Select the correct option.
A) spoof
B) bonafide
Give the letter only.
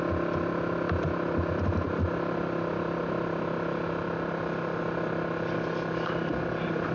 B